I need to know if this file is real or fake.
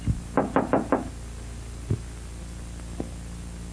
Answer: real